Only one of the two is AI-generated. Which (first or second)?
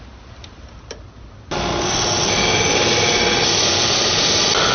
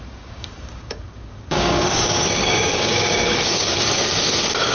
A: second